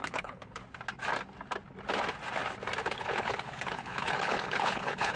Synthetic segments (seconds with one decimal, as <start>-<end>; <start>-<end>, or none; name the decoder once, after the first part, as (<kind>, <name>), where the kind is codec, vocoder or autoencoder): 0.0-0.6 (codec, HILCodec); 2.8-5.2